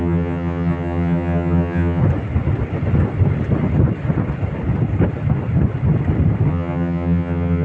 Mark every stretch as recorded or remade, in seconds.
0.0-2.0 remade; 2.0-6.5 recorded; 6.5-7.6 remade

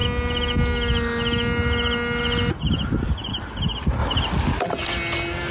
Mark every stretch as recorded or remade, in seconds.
0.0-5.5 recorded

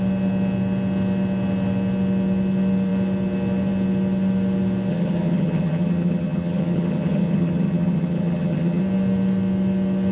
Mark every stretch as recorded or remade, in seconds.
0.0-4.9 recorded; 4.9-8.8 remade; 8.8-10.1 recorded

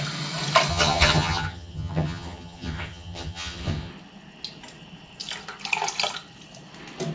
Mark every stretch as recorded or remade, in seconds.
0.0-0.7 recorded; 0.7-3.9 remade; 3.9-7.1 recorded

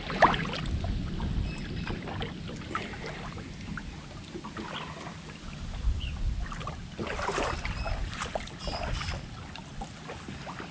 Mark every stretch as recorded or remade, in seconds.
0.0-10.7 recorded

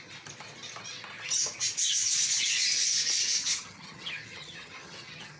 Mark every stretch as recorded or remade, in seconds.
0.0-3.4 recorded; 3.4-5.4 remade

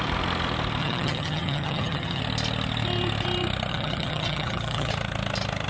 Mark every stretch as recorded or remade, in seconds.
0.0-0.8 recorded; 0.8-2.2 remade; 2.2-3.7 recorded; 3.7-4.9 remade; 4.9-5.7 recorded

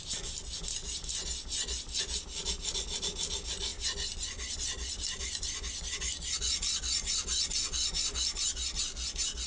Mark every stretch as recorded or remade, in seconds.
0.0-9.5 recorded